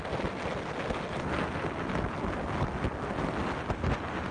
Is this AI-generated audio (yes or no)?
no